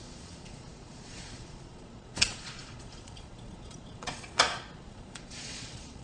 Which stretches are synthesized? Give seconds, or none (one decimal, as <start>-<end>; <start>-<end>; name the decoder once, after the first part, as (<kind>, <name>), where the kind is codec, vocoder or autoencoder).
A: 0.0-6.0 (vocoder, Vocos)